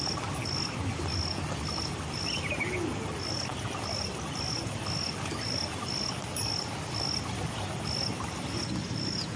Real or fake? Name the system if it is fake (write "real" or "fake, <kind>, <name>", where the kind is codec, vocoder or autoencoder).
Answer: real